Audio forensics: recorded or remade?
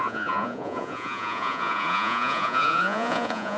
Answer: remade